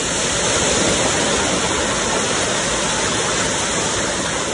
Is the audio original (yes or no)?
yes